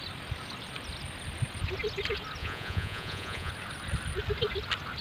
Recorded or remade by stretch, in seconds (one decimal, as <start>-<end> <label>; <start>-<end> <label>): 0.0-2.4 recorded; 2.4-3.5 remade; 3.5-5.0 recorded